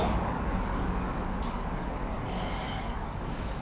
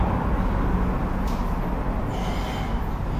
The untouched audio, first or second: second